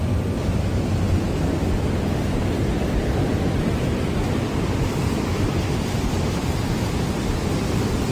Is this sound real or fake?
fake